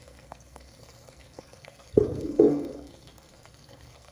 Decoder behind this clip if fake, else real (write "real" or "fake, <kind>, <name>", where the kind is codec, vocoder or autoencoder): fake, codec, SNAC